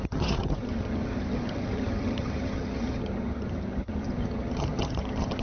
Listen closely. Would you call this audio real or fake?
fake